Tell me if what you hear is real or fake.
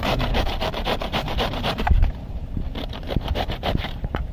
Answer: fake